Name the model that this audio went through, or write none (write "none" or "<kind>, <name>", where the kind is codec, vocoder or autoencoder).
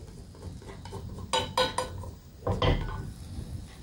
none